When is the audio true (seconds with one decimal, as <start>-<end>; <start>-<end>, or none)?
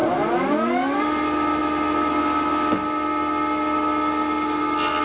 0.0-5.0